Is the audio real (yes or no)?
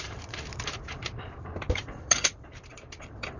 no